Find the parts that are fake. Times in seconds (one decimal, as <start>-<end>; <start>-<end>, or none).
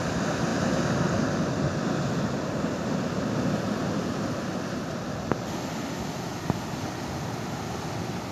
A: none